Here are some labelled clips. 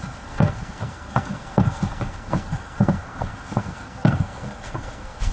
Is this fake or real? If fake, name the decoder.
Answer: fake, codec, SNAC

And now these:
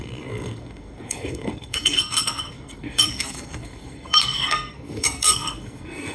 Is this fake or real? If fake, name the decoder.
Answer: fake, codec, SNAC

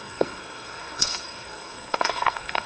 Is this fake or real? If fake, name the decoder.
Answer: fake, codec, SNAC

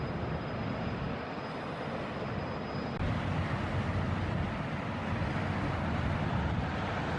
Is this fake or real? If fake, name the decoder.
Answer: real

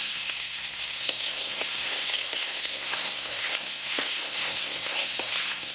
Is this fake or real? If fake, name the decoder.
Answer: fake, codec, SNAC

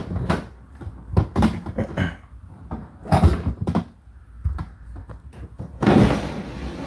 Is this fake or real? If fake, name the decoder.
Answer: real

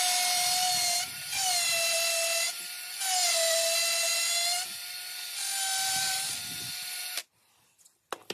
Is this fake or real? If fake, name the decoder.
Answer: real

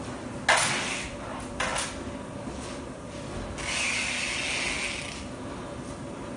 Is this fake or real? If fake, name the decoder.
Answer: real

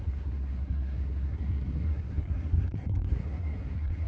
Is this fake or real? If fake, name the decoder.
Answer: fake, codec, SNAC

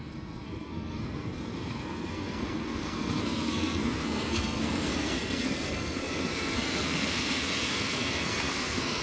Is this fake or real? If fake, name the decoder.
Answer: fake, codec, SNAC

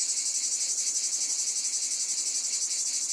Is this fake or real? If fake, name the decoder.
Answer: real